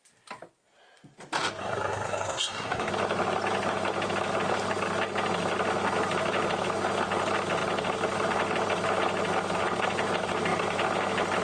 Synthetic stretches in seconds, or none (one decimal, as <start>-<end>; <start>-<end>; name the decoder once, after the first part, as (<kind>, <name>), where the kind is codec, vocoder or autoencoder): 1.6-2.9 (codec, SNAC)